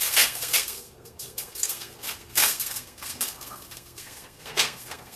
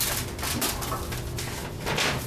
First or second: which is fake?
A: first